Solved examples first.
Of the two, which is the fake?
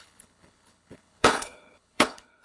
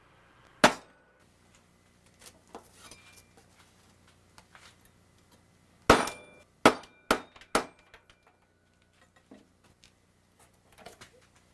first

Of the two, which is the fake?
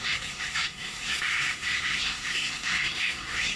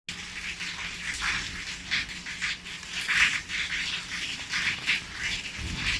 first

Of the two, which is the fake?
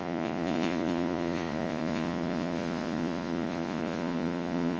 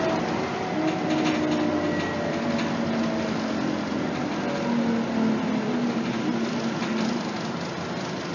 first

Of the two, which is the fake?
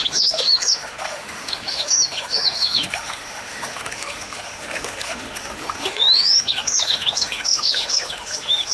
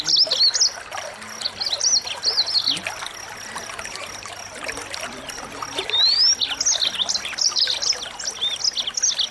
first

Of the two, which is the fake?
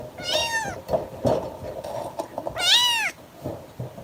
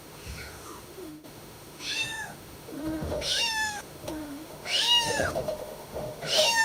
second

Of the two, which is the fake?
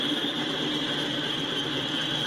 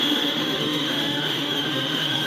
second